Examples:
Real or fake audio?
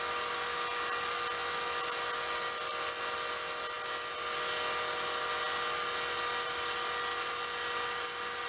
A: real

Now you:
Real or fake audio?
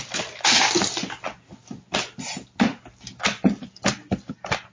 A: real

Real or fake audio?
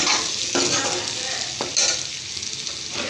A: real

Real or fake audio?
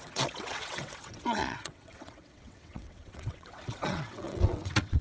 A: fake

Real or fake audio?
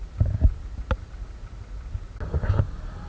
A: real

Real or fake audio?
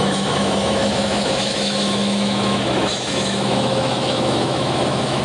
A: fake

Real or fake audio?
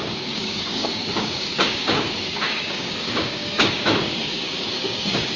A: fake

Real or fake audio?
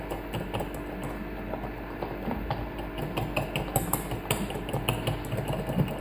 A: real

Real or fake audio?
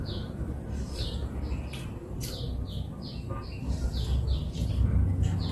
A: real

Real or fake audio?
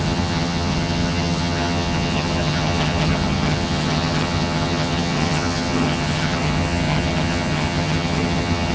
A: fake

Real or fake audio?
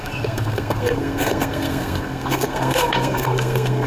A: fake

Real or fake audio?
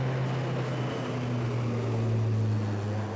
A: real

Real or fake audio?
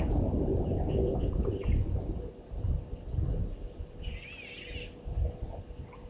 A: real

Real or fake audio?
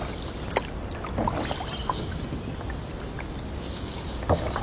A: real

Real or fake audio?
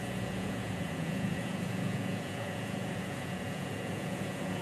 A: fake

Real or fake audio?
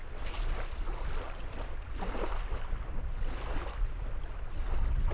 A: real